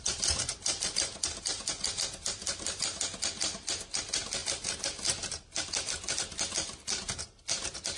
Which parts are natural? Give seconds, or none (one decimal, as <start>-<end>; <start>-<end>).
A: 0.0-8.0